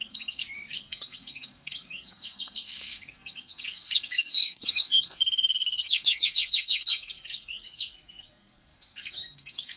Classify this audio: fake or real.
fake